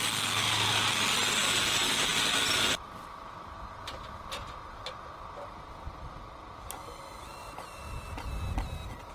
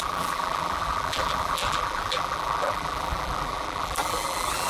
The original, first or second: first